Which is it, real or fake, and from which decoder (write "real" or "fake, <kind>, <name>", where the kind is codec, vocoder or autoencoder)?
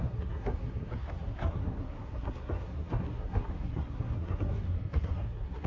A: fake, codec, SNAC